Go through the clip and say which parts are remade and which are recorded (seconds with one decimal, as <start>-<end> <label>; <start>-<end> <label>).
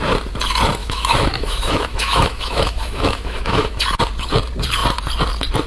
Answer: 0.0-0.8 recorded; 0.8-3.8 remade; 3.8-5.7 recorded